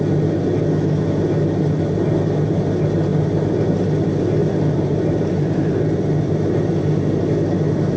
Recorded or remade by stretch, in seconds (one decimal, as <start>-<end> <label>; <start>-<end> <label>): 0.0-4.4 recorded; 4.4-7.2 remade; 7.2-8.0 recorded